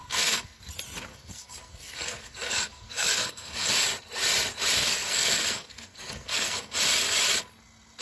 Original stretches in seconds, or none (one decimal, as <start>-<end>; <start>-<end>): 0.6-1.1; 3.7-4.8; 6.8-8.0